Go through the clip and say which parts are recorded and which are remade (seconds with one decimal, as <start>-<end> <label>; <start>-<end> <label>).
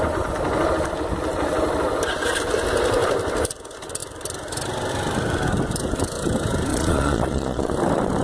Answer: 0.0-6.7 recorded; 6.7-7.7 remade; 7.7-8.2 recorded